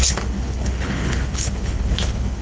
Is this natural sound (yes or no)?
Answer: no